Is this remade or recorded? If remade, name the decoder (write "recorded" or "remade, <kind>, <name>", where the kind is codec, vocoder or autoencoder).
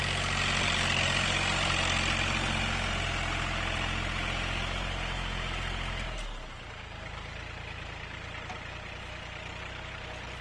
recorded